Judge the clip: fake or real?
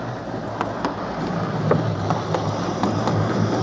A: real